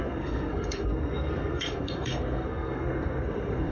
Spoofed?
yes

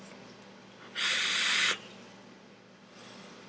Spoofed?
no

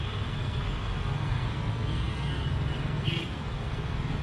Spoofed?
yes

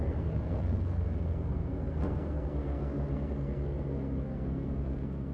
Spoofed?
yes